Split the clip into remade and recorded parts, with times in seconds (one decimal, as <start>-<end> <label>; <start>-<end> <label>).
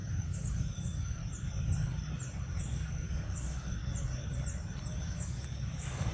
0.0-1.2 remade; 1.2-2.6 recorded; 2.6-3.8 remade; 3.8-5.0 recorded; 5.0-6.1 remade